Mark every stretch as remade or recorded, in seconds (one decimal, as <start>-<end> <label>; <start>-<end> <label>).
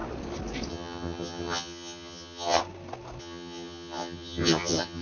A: 0.0-0.7 recorded; 0.7-2.6 remade; 2.6-3.2 recorded; 3.2-5.0 remade